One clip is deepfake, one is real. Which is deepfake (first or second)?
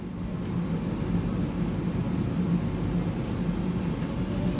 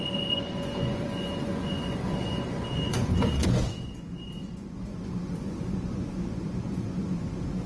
second